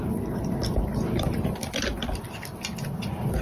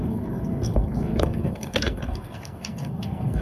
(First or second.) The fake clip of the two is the second